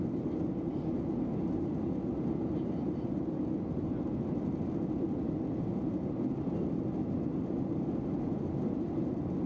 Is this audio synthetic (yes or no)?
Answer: no